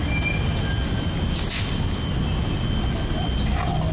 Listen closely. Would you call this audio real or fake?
real